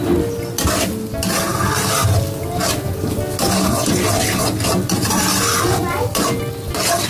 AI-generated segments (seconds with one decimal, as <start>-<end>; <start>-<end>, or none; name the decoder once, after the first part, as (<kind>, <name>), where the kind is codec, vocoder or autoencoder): none